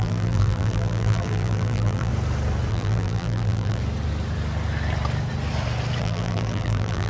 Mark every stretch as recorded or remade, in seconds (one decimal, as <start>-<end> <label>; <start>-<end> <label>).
0.0-2.1 remade; 2.1-2.7 recorded; 2.7-3.8 remade; 3.8-6.0 recorded; 6.0-7.1 remade